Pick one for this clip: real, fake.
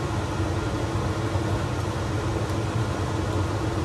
real